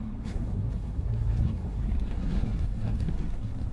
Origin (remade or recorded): remade